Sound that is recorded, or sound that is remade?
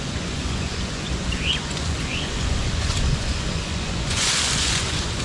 remade